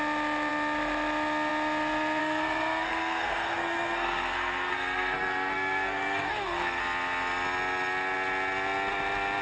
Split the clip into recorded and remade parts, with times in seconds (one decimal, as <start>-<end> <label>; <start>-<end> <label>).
0.0-2.2 recorded; 2.2-6.8 remade; 6.8-9.4 recorded